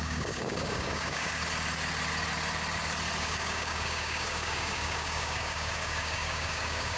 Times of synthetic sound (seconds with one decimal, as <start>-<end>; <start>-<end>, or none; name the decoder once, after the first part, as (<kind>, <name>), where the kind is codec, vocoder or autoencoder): 0.0-1.4 (codec, DAC); 3.2-7.0